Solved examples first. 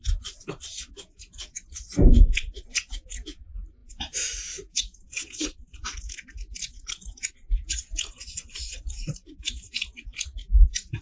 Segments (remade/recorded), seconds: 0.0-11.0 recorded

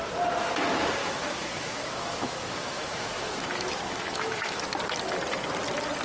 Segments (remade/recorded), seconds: 0.0-1.0 recorded; 1.0-4.6 remade; 4.6-6.0 recorded

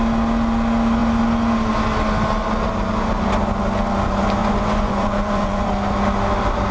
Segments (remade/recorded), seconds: 0.0-4.4 recorded; 4.4-5.7 remade; 5.7-6.7 recorded

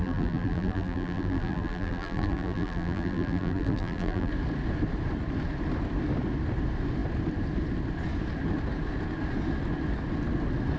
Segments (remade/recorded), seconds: 0.0-4.3 remade; 4.3-10.8 recorded

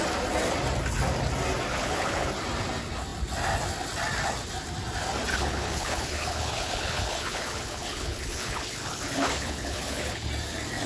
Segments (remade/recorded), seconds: 0.0-1.7 recorded; 1.7-2.3 remade; 2.3-5.3 recorded; 5.3-10.3 remade; 10.3-10.9 recorded

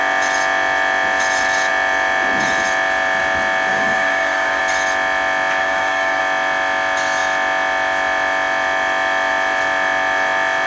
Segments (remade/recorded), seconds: 0.0-3.7 recorded; 3.7-4.6 remade; 4.6-5.6 recorded; 5.6-6.2 remade; 6.2-10.7 recorded

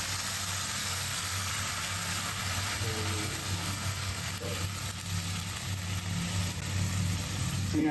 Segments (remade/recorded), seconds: 0.0-0.8 recorded; 0.8-1.5 remade; 1.5-3.4 recorded; 3.4-4.3 remade; 4.3-7.9 recorded